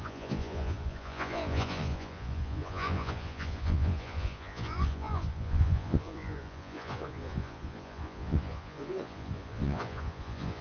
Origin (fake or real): fake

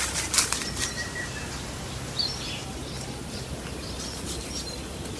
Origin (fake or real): real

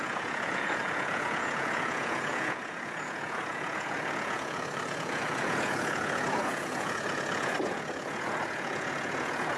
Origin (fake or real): fake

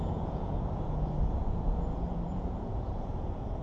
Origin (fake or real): fake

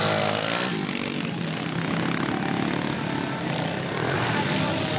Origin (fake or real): real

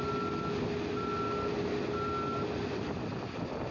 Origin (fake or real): real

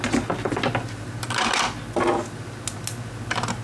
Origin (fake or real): real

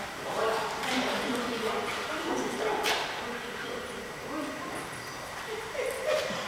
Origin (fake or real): real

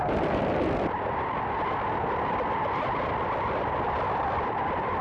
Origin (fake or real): real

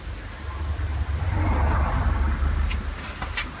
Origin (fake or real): real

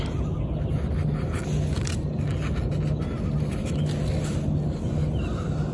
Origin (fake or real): real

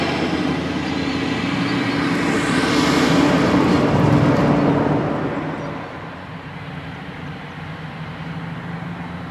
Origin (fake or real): real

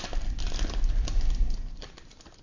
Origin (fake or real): real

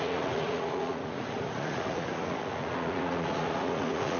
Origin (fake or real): fake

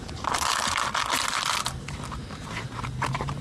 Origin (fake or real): real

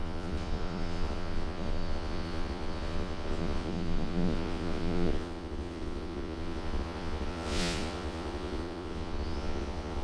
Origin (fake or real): fake